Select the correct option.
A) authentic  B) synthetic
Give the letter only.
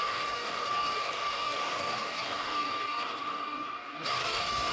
B